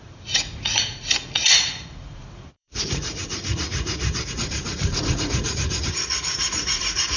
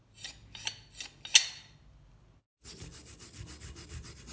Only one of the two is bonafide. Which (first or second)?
second